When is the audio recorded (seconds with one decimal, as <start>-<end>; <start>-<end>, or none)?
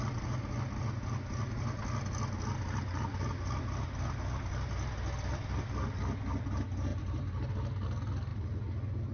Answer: 0.0-6.9; 7.5-9.1